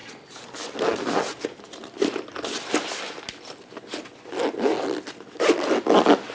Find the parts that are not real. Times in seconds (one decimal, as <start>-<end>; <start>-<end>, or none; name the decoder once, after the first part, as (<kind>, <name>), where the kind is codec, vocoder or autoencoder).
none